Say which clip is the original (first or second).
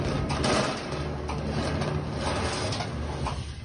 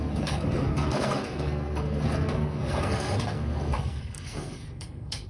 first